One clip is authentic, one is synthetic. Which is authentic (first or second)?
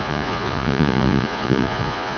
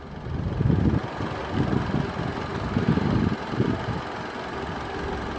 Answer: second